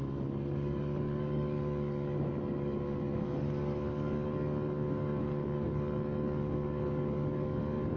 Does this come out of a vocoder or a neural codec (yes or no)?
yes